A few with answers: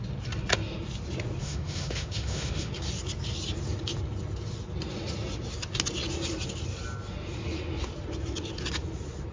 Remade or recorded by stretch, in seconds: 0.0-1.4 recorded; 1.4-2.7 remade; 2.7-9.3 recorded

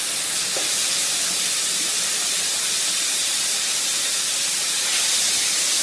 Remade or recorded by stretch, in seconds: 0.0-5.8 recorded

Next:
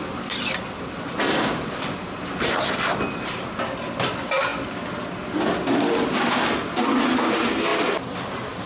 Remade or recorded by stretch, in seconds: 0.0-8.7 recorded